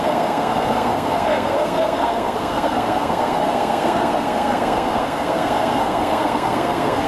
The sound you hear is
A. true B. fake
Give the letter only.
B